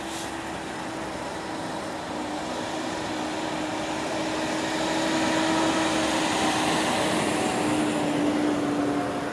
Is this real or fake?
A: real